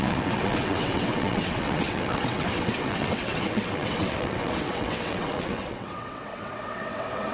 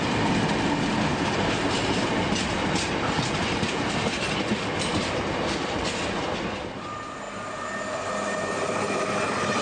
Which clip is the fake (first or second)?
first